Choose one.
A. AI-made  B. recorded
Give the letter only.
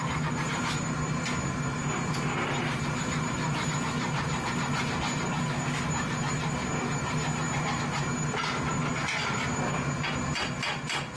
B